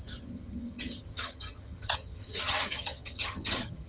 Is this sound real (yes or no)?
no